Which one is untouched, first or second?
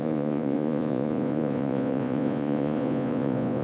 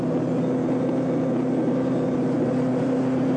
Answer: second